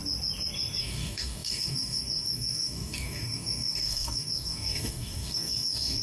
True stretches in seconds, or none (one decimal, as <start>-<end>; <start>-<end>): 0.0-0.8